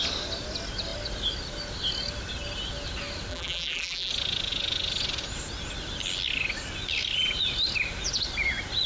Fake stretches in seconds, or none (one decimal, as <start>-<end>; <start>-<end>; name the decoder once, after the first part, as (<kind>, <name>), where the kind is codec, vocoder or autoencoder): 3.3-4.1 (vocoder, BigVGAN v2)